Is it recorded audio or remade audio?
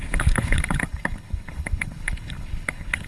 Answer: remade